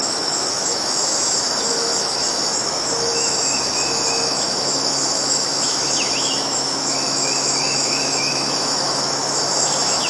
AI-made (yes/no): yes